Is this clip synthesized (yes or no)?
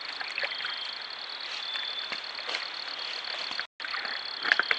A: no